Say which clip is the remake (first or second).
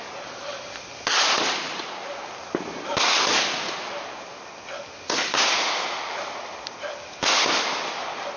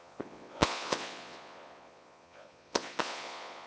second